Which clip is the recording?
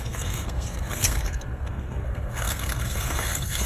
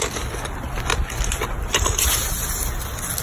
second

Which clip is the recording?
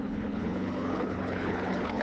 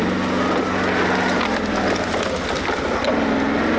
second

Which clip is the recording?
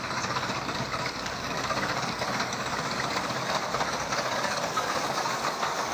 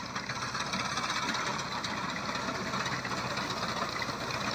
second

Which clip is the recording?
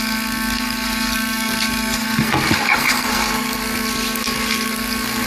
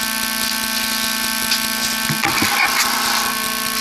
second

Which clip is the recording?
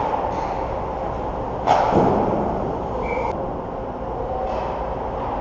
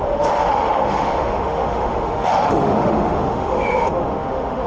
first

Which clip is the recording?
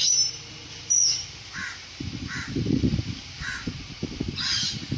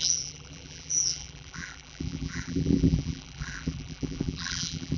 first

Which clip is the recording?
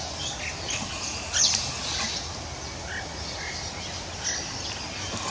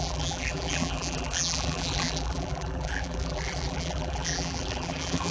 first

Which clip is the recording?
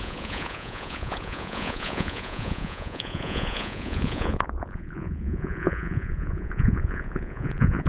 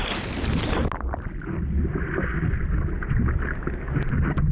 second